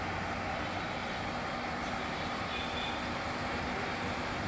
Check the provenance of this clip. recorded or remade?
recorded